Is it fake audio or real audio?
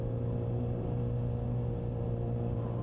real